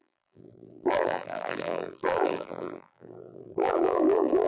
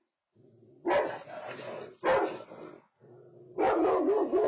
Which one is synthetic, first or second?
first